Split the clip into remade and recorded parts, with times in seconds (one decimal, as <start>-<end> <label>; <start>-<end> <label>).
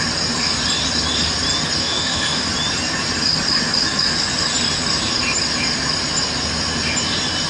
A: 0.0-1.8 recorded; 1.8-2.5 remade; 2.5-7.5 recorded